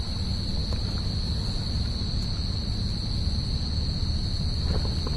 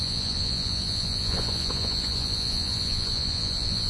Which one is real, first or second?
first